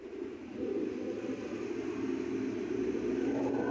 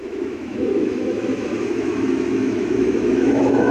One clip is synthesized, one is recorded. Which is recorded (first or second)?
first